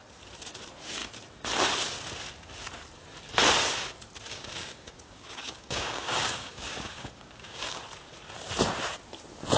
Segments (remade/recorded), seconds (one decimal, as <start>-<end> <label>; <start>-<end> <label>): 0.0-4.3 recorded; 4.3-7.8 remade; 7.8-9.6 recorded